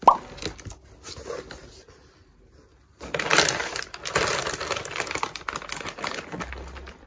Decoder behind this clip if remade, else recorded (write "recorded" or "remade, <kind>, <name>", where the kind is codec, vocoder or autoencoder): recorded